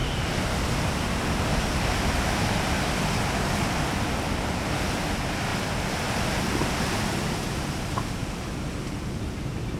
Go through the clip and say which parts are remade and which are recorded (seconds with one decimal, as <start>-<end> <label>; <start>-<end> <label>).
0.0-9.8 recorded